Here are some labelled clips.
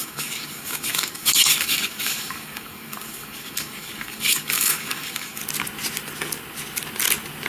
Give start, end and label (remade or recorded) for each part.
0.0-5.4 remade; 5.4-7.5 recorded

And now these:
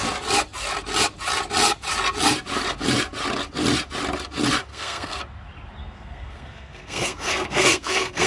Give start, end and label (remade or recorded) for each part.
0.0-4.7 recorded; 4.7-5.2 remade; 5.2-5.8 recorded; 5.8-8.3 remade

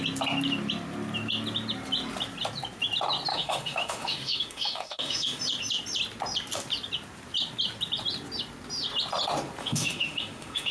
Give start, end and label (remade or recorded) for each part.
0.0-3.3 recorded; 3.3-5.4 remade; 5.4-9.6 recorded; 9.6-10.7 remade

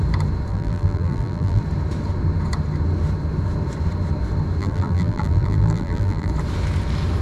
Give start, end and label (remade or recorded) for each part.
0.0-0.5 recorded; 0.5-1.6 remade; 1.6-4.6 recorded; 4.6-6.3 remade; 6.3-7.2 recorded

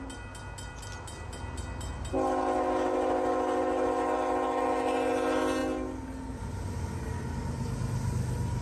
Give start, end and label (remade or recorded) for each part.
0.0-8.6 recorded

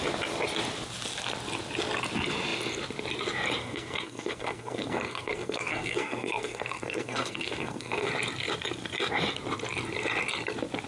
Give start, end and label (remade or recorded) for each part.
0.0-3.6 recorded; 3.6-8.1 remade; 8.1-10.9 recorded

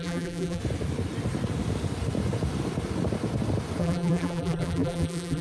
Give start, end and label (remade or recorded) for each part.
0.0-0.6 remade; 0.6-3.8 recorded; 3.8-5.4 remade

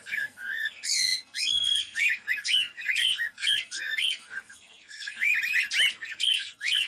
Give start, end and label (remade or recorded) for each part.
0.0-5.3 remade; 5.3-5.9 recorded; 5.9-6.9 remade